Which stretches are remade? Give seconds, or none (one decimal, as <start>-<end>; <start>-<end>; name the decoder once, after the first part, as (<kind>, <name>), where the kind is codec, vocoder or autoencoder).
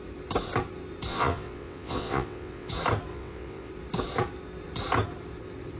1.1-2.7 (vocoder, WaveNeXt); 3.1-3.7